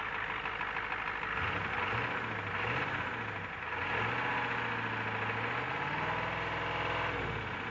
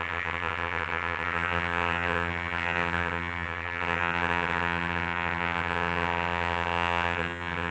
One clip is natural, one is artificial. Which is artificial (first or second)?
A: second